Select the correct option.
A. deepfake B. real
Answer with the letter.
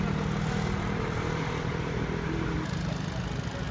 B